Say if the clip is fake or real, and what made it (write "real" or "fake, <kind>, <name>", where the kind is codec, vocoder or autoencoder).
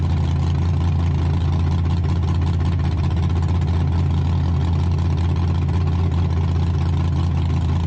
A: real